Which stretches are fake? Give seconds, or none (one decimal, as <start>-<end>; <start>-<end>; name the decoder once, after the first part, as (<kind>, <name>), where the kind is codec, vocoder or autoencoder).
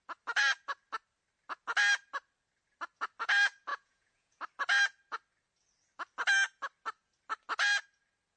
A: 3.7-4.4 (vocoder, Vocos)